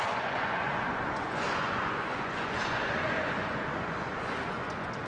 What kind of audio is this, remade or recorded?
remade